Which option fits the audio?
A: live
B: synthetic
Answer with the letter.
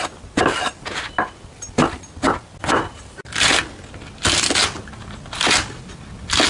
A